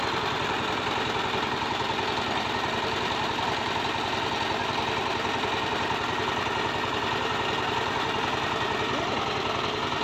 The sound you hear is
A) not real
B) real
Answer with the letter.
B